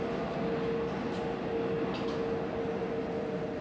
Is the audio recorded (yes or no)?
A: yes